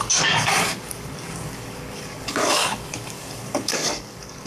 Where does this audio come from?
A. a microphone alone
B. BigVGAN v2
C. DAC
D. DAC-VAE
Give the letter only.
C